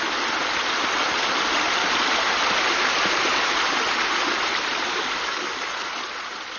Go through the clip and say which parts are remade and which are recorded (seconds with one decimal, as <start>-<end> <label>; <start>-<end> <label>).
0.0-4.9 recorded; 4.9-5.5 remade; 5.5-6.6 recorded

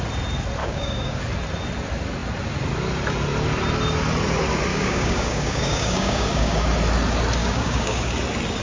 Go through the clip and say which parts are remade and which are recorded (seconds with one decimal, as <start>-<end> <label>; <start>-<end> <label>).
0.0-0.6 recorded; 0.6-1.2 remade; 1.2-4.7 recorded; 4.7-6.7 remade; 6.7-7.4 recorded; 7.4-8.1 remade; 8.1-8.6 recorded

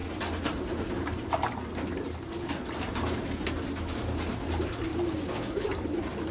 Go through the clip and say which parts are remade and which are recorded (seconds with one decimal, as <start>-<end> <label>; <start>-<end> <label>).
0.0-4.9 recorded; 4.9-5.7 remade; 5.7-6.3 recorded

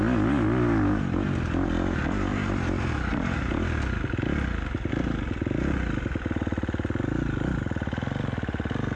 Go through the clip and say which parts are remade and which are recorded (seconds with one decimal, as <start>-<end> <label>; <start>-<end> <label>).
0.0-9.0 recorded

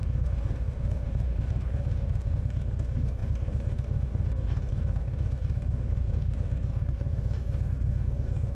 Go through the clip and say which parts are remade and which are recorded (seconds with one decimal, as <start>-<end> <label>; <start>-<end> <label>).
0.0-8.5 remade